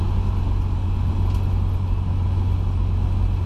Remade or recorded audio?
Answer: recorded